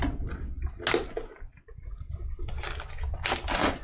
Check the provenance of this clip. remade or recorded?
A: recorded